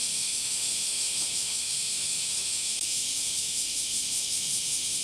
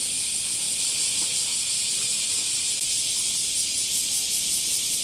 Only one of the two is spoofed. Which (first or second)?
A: first